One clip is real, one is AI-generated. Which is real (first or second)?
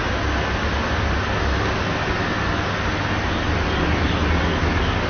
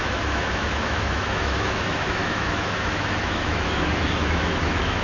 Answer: first